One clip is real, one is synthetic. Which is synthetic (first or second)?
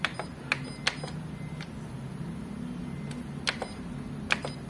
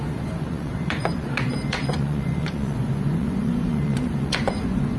second